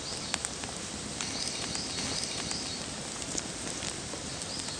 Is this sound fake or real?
real